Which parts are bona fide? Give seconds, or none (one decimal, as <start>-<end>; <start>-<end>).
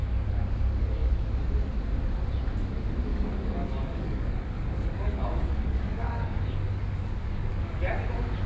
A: 1.3-3.1; 7.9-8.5